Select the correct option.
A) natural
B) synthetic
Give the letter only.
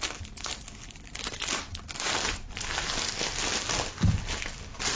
A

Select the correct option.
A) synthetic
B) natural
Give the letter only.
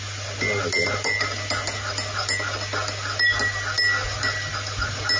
B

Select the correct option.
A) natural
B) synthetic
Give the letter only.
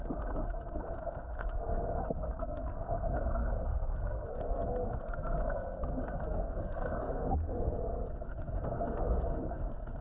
B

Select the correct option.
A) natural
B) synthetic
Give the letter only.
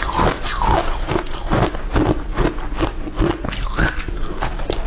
A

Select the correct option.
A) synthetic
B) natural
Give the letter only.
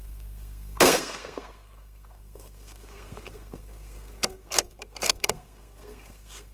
A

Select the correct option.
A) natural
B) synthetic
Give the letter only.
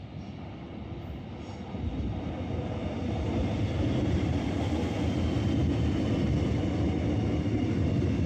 A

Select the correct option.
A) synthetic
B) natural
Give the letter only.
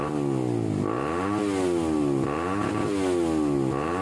B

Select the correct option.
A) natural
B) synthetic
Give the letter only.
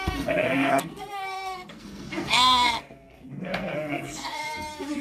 B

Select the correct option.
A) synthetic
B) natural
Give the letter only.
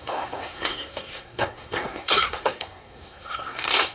A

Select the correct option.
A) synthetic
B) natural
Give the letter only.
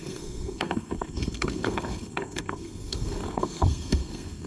A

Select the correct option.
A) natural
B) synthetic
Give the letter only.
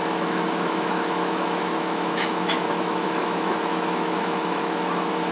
B